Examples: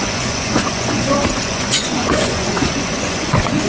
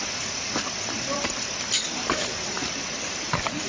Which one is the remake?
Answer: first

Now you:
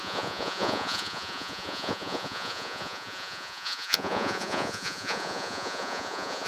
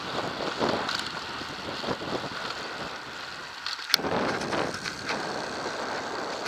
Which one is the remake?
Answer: first